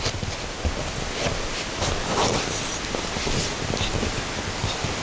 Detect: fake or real real